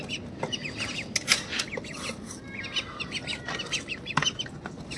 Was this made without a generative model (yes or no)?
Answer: yes